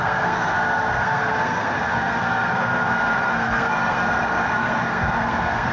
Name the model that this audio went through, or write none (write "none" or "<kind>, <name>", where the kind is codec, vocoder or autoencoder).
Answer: codec, SNAC